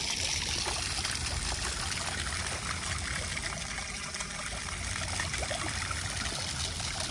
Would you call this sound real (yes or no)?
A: yes